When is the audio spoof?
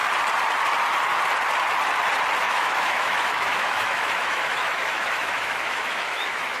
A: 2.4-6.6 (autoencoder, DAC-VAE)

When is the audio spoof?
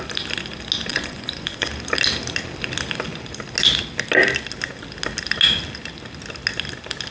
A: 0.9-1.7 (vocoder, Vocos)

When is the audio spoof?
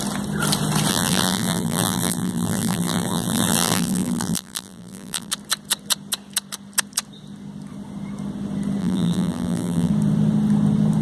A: 0.9-5.3 (vocoder, BigVGAN v2); 8.8-9.9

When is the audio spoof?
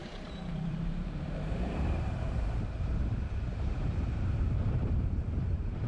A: 0.0-5.9 (vocoder, BigVGAN v2)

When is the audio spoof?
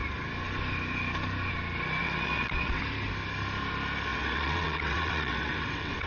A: 2.0-2.8 (vocoder, WaveNeXt); 4.1-6.1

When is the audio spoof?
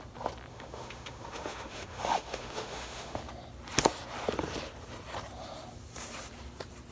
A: 0.5-3.2 (autoencoder, DAC-VAE)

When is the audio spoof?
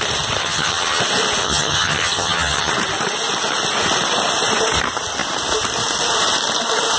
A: 0.4-1.0 (vocoder, HiFi-GAN); 1.4-2.7